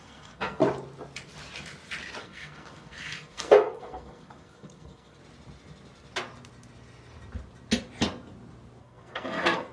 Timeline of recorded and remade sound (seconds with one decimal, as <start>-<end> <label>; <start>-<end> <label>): 0.0-0.6 remade; 0.6-2.2 recorded; 2.2-5.2 remade; 5.2-8.8 recorded; 8.8-9.7 remade